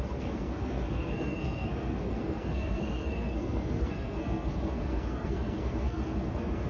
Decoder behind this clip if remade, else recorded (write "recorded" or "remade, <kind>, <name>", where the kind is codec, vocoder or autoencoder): remade, codec, SNAC